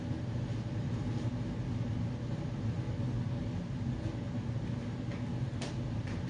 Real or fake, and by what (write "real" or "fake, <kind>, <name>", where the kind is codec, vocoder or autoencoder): real